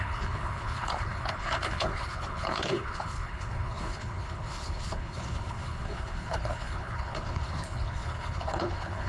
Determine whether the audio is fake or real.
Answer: fake